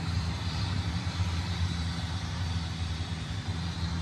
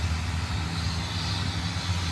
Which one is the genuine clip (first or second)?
second